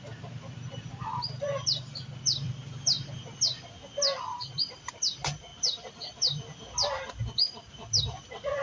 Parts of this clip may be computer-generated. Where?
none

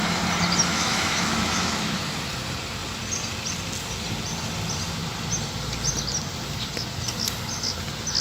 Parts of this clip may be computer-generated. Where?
0.7-2.0 (autoencoder, DAC-VAE)

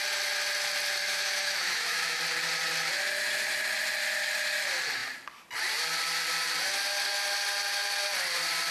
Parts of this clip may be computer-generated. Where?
1.0-2.2 (autoencoder, DAC-VAE)

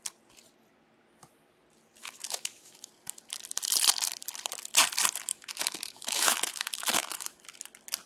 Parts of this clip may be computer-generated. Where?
2.0-2.9 (autoencoder, DAC-VAE); 5.3-7.4